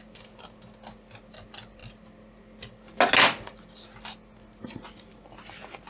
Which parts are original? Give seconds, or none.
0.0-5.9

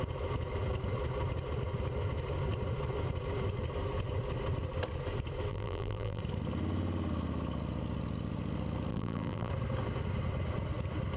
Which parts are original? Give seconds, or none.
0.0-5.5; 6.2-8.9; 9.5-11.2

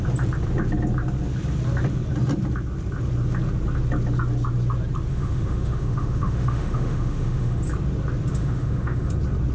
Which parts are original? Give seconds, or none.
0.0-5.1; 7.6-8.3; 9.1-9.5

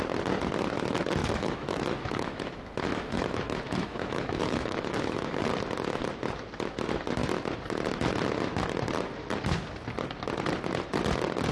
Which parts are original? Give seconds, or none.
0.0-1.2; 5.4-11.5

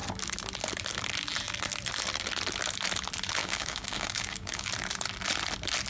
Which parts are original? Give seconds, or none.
0.0-3.4; 4.7-5.9

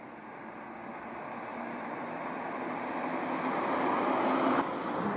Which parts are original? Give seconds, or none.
0.0-1.5; 2.6-5.2